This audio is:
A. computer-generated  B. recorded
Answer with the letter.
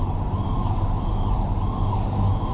B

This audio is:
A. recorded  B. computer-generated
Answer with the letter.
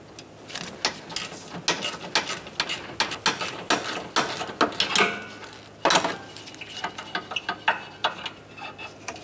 A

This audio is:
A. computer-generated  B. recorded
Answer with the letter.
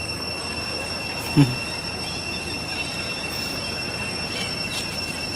B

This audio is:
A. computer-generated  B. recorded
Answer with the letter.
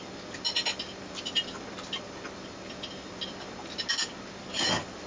B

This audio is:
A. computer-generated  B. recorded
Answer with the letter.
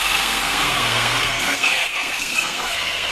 A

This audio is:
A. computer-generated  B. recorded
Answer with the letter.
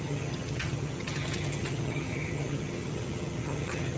A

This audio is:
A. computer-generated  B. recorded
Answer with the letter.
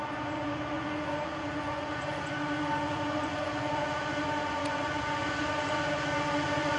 A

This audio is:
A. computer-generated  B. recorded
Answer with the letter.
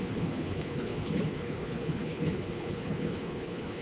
A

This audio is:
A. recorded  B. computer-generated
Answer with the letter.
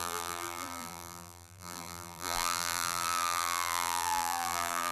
B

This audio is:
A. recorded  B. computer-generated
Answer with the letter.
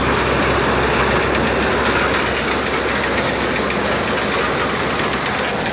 A